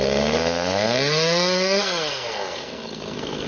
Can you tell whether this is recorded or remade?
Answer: remade